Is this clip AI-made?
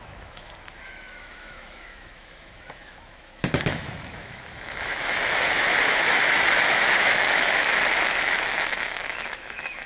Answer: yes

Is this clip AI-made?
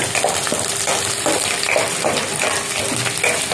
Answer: no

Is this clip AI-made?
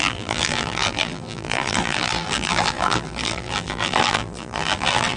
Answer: yes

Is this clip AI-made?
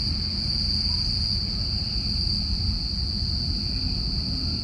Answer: no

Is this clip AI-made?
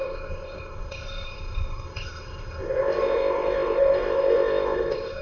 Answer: yes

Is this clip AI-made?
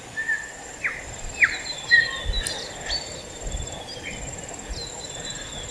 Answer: no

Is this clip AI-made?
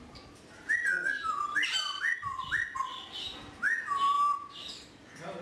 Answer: no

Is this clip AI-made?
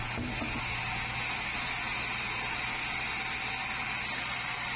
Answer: no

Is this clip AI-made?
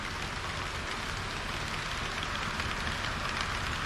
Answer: no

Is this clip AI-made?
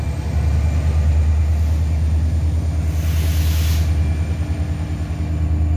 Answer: no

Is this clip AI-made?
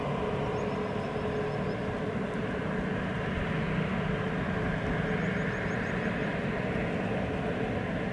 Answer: no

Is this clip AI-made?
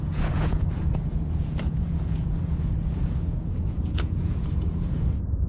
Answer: yes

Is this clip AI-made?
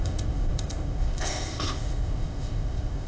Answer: yes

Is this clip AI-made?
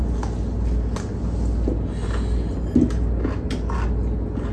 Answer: no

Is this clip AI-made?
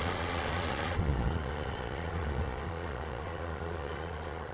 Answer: yes